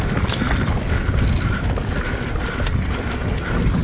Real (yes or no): yes